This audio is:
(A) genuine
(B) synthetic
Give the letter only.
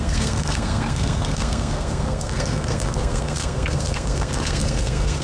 B